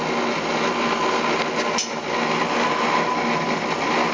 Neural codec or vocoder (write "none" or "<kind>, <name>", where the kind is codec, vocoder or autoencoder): none